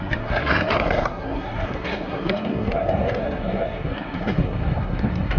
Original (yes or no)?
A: no